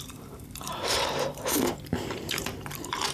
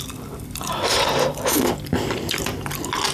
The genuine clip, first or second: second